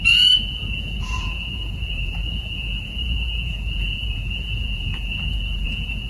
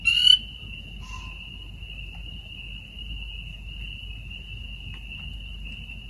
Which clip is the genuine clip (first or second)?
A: second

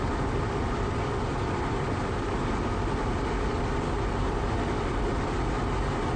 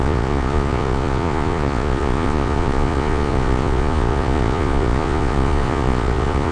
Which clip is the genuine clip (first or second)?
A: first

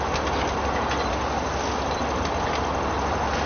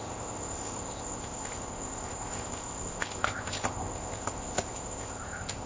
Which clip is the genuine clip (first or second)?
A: first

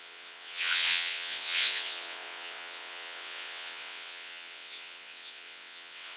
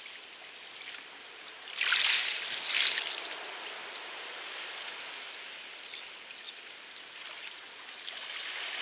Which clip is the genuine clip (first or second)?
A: second